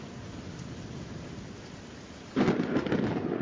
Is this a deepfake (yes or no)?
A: no